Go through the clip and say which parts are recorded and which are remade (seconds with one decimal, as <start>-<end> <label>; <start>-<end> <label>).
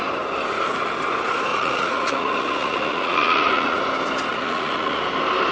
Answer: 0.0-1.5 recorded; 1.5-3.8 remade; 3.8-4.3 recorded; 4.3-5.0 remade; 5.0-5.5 recorded